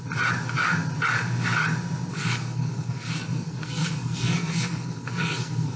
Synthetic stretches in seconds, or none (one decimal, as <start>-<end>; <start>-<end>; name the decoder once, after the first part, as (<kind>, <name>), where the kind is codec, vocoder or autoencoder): 2.1-5.8 (codec, SNAC)